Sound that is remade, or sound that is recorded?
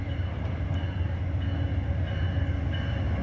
recorded